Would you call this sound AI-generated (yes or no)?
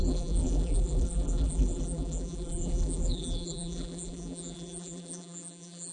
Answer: yes